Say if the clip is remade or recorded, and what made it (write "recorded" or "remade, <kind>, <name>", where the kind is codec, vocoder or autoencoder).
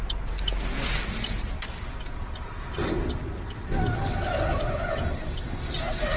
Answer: recorded